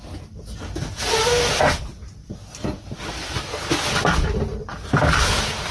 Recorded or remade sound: recorded